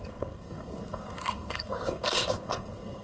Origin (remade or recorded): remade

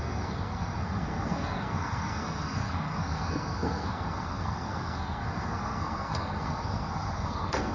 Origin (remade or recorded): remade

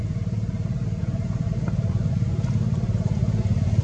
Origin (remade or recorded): recorded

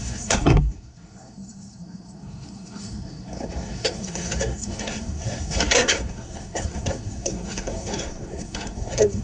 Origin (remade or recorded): remade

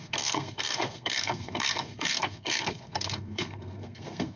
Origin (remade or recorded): remade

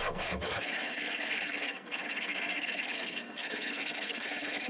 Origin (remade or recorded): remade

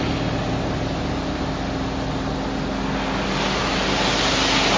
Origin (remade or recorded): recorded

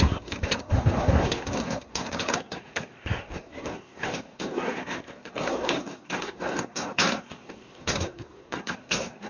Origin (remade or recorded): remade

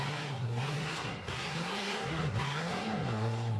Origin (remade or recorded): remade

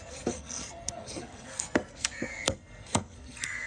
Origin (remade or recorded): remade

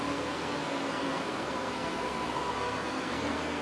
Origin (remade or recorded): remade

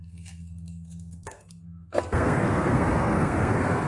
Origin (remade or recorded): remade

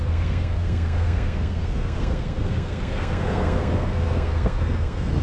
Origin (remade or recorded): remade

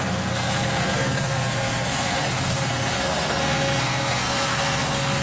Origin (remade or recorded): remade